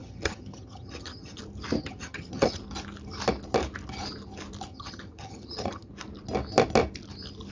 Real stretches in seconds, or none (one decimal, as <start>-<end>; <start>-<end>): 1.4-1.8; 2.6-4.7; 5.9-7.5